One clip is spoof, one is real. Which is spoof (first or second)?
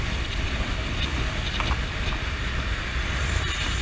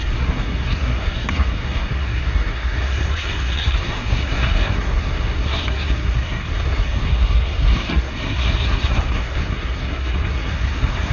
second